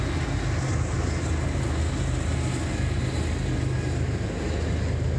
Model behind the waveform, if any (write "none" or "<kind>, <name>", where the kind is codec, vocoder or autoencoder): none